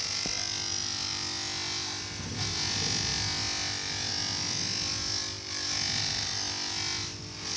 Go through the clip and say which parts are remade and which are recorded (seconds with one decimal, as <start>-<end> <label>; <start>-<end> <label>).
0.0-7.6 recorded